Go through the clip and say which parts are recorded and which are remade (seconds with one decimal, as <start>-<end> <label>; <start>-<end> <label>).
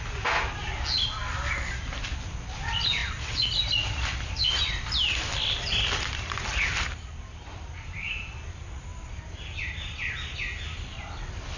0.0-1.2 recorded; 1.2-2.5 remade; 2.5-3.0 recorded; 3.0-7.1 remade; 7.1-8.9 recorded; 8.9-9.7 remade; 9.7-11.6 recorded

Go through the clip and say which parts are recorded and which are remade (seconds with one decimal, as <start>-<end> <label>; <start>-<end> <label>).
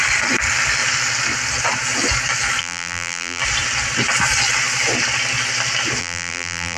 0.0-2.6 recorded; 2.6-3.4 remade; 3.4-6.0 recorded; 6.0-6.8 remade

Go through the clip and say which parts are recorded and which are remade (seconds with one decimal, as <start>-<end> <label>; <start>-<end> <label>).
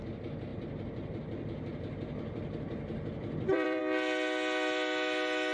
0.0-0.5 recorded; 0.5-3.8 remade; 3.8-5.5 recorded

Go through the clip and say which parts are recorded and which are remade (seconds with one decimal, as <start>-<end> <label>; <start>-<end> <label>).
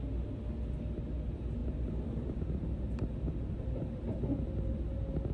0.0-1.6 recorded; 1.6-4.8 remade; 4.8-5.3 recorded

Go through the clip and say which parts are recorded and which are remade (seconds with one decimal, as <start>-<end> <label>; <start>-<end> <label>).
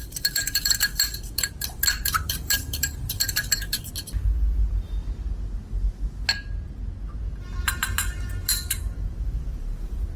0.0-3.9 remade; 3.9-7.3 recorded; 7.3-10.2 remade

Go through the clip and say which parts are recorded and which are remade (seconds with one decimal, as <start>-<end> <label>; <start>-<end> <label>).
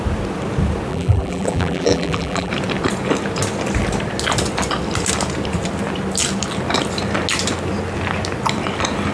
0.0-0.9 recorded; 0.9-2.5 remade; 2.5-9.1 recorded